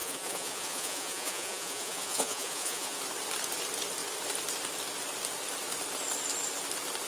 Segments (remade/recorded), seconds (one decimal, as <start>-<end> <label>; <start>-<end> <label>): 0.0-3.0 remade; 3.0-7.1 recorded